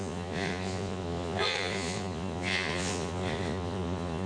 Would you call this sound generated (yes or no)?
yes